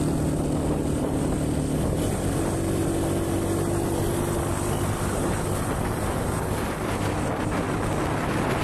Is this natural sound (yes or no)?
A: yes